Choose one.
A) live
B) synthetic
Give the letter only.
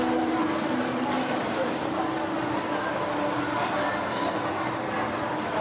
A